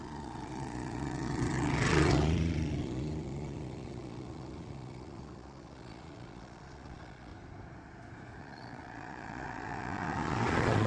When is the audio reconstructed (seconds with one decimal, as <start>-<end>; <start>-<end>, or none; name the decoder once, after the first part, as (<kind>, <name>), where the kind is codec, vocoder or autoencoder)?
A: 0.0-7.3 (vocoder, Vocos); 8.4-10.9